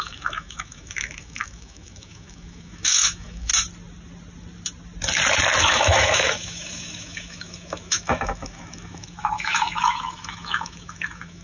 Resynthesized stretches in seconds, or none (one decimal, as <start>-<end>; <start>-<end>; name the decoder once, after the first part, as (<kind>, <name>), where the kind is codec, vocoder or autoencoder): 0.0-3.5 (autoencoder, DAC-VAE); 5.6-11.4